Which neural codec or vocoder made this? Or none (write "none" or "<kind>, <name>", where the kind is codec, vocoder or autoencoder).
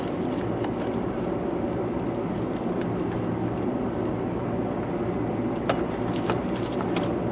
none